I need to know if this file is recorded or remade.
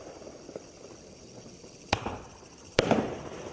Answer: recorded